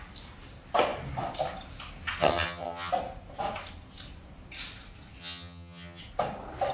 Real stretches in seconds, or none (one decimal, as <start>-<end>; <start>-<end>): 0.0-2.2; 2.9-5.2; 6.0-6.7